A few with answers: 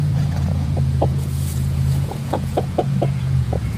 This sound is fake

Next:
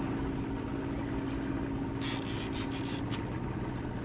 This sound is real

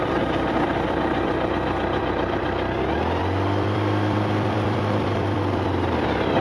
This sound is fake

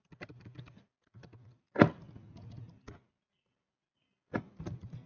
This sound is real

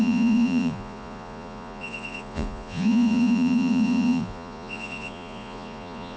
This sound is fake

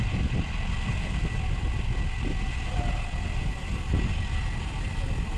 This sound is real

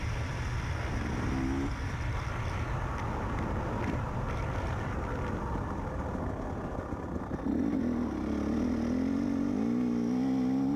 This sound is real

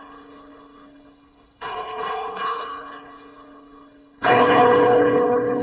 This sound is fake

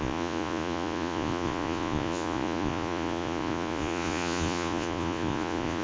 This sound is fake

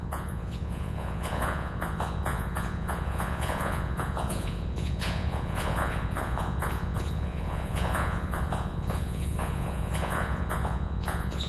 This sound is fake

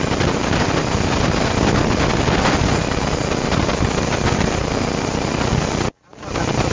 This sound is real